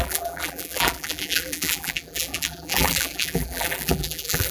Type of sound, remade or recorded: remade